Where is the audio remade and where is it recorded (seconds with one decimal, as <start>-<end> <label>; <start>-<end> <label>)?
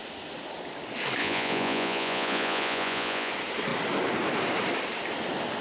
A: 0.0-1.2 recorded; 1.2-3.3 remade; 3.3-5.6 recorded